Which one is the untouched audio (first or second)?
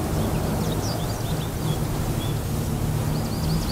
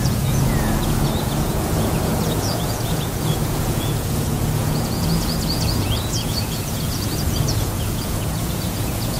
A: first